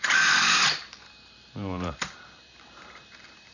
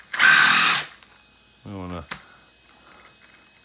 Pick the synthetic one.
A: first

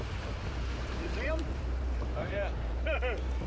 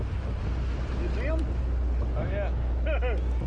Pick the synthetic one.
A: first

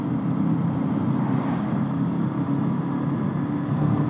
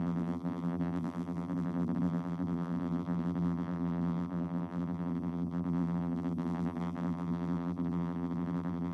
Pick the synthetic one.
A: second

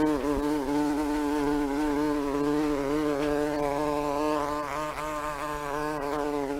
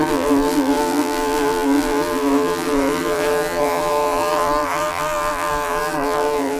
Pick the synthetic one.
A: second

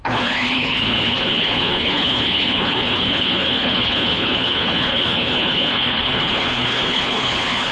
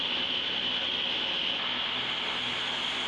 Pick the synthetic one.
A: first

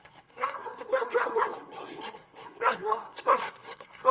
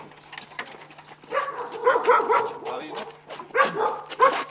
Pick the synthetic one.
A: first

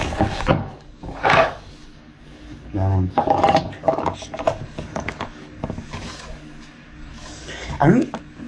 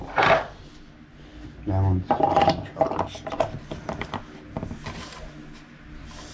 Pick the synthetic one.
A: first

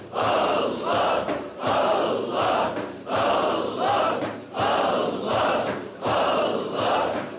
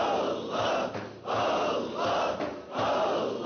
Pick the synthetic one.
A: first